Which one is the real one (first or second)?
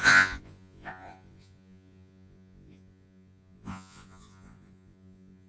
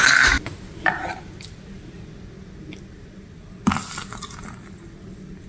second